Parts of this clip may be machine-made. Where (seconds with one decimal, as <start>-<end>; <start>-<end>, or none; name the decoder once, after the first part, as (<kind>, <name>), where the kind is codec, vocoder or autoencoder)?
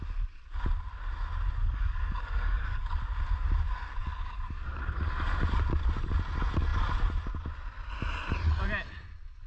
1.6-3.0 (codec, DAC); 4.0-4.8